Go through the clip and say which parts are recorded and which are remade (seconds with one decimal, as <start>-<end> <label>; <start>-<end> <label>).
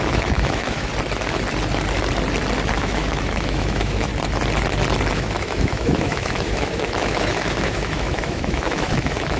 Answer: 0.0-0.9 remade; 0.9-2.8 recorded; 2.8-4.1 remade; 4.1-5.1 recorded; 5.1-9.4 remade